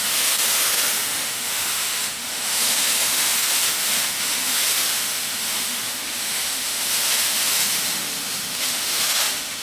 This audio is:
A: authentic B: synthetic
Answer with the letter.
B